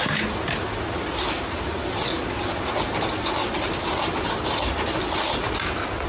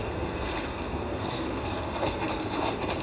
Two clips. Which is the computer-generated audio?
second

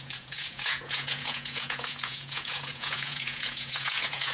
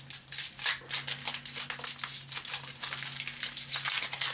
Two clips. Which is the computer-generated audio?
first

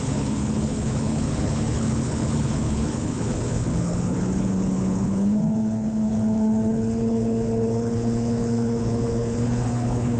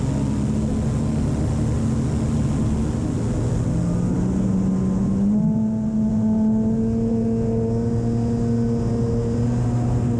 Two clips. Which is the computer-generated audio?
first